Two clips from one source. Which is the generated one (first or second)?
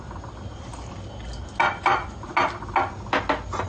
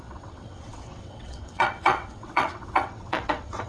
second